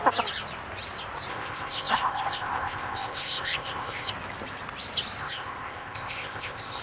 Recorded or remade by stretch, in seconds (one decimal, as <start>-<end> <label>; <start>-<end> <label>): 0.0-1.3 recorded; 1.3-4.1 remade; 4.1-5.2 recorded; 5.2-6.8 remade

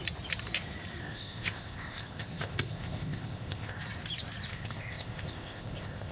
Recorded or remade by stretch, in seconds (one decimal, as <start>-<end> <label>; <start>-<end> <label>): 0.0-1.0 recorded; 1.0-3.8 remade; 3.8-4.5 recorded; 4.5-6.1 remade

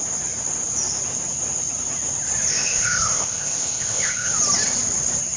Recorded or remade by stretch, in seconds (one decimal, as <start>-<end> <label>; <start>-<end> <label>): 0.0-2.5 recorded; 2.5-4.3 remade; 4.3-5.4 recorded

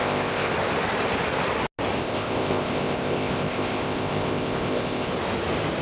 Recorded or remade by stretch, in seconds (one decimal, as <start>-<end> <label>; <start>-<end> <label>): 0.0-0.5 remade; 0.5-2.0 recorded; 2.0-5.1 remade; 5.1-5.8 recorded